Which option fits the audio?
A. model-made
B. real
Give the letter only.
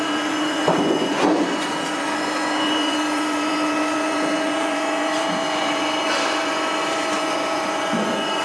A